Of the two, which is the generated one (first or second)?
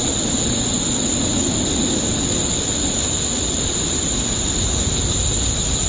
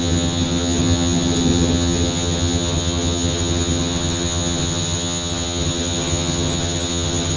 second